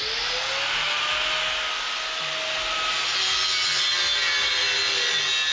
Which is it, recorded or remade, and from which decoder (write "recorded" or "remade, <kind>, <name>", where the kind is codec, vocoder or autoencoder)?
recorded